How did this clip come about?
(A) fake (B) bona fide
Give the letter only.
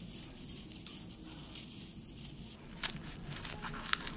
B